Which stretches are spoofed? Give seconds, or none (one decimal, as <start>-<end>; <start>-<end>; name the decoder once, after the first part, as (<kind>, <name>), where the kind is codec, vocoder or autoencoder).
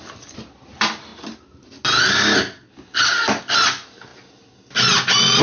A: 0.0-1.1 (vocoder, BigVGAN v2); 3.4-4.1